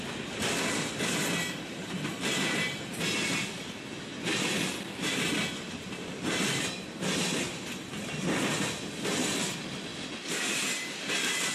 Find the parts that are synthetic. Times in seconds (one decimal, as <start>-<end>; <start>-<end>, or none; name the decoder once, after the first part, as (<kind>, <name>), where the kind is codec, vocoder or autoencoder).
none